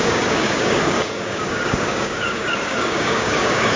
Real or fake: fake